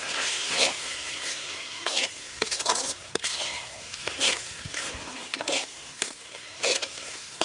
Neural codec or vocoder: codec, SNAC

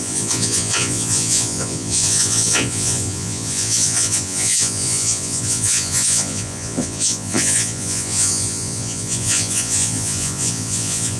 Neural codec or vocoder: vocoder, Vocos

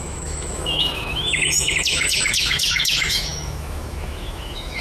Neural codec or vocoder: autoencoder, DAC-VAE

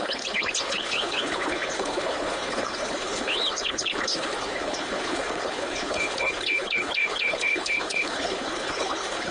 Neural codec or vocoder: codec, HILCodec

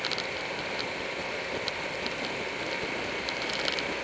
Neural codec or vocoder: none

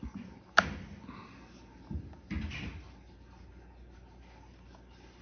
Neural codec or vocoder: none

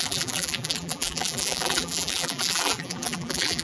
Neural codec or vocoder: vocoder, BigVGAN v2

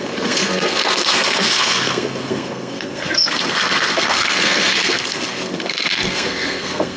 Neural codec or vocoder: codec, SNAC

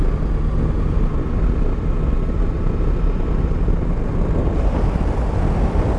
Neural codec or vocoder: none